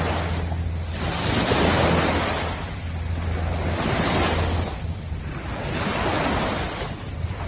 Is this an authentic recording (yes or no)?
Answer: yes